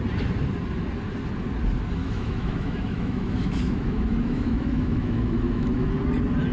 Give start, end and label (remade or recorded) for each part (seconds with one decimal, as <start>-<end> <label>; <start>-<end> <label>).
0.0-2.0 recorded; 2.0-5.9 remade; 5.9-6.5 recorded